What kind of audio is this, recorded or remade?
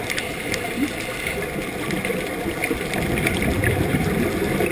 recorded